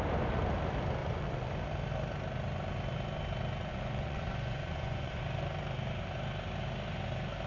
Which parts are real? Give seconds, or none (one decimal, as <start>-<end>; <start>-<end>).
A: 0.0-1.0; 1.5-3.7; 5.2-7.5